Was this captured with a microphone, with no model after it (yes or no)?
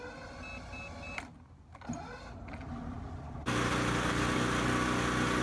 yes